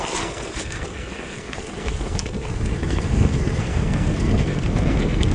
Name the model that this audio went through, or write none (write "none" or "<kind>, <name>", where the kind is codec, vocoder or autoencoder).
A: codec, SNAC